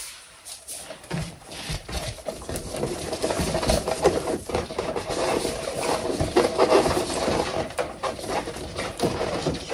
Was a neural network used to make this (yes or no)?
yes